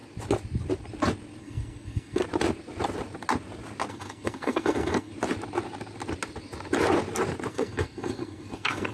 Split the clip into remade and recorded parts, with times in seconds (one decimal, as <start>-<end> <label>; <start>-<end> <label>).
0.0-1.4 recorded; 1.4-2.2 remade; 2.2-3.9 recorded; 3.9-5.1 remade; 5.1-7.5 recorded; 7.5-8.9 remade